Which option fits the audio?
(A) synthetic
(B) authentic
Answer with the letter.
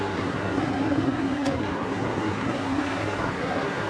A